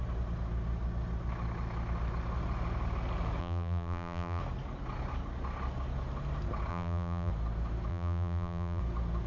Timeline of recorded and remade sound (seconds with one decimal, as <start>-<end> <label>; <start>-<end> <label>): 0.0-3.4 recorded; 3.4-4.4 remade; 4.4-6.7 recorded; 6.7-7.3 remade; 7.3-7.9 recorded; 7.9-8.8 remade; 8.8-9.3 recorded